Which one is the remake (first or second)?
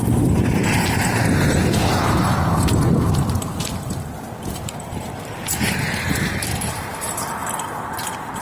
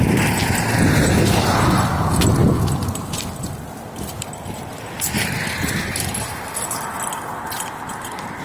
first